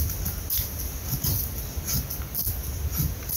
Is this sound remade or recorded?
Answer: recorded